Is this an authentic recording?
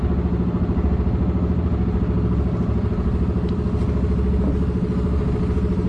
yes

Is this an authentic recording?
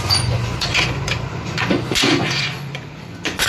no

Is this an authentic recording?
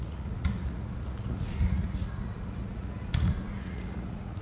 no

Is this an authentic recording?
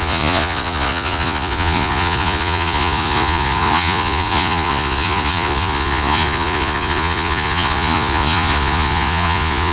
no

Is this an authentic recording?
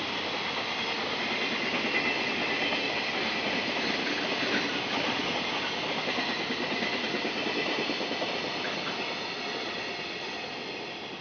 yes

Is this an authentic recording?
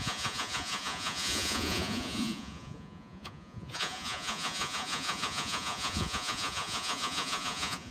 no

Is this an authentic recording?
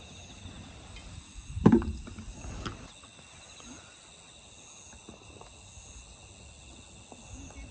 yes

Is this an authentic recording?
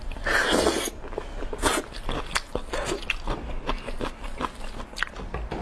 yes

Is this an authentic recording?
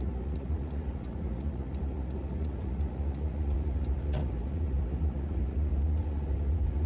no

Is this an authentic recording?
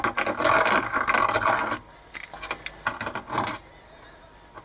yes